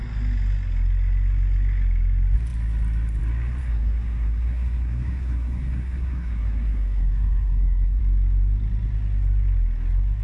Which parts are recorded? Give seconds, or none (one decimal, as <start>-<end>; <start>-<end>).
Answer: 0.0-3.6; 8.0-10.2